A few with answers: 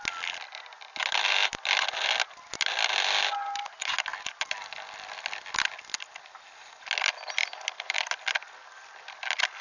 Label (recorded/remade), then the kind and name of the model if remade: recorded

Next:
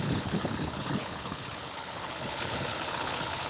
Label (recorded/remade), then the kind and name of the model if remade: remade, codec, HILCodec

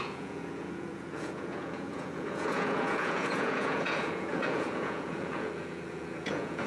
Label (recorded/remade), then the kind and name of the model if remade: remade, vocoder, Vocos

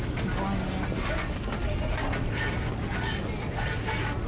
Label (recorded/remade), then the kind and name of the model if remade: recorded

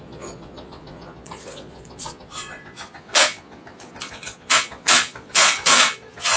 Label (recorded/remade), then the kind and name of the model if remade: remade, vocoder, Vocos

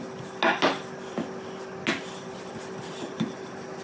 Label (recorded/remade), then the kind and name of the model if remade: recorded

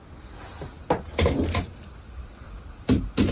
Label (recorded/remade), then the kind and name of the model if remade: recorded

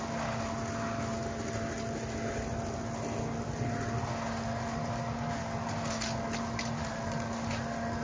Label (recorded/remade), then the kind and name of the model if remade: recorded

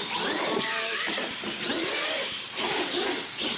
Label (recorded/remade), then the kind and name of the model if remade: recorded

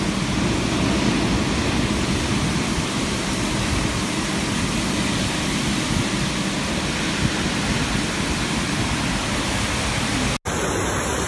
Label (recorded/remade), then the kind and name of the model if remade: recorded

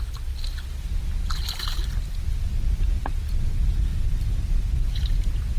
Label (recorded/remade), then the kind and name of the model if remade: recorded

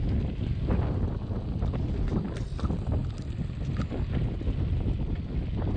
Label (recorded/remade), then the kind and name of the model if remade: recorded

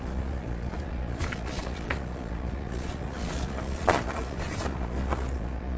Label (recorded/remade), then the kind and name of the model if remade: remade, vocoder, Vocos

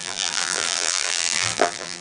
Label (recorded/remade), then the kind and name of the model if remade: remade, vocoder, BigVGAN v2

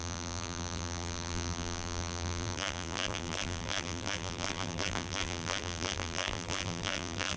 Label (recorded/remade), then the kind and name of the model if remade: remade, vocoder, BigVGAN v2